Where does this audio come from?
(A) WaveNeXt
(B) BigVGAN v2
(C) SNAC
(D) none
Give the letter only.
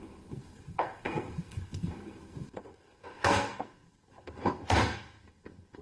C